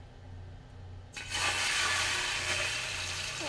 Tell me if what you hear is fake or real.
fake